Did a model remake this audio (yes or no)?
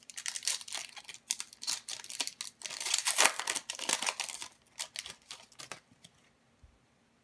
no